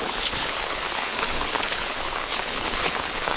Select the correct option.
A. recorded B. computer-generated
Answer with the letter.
B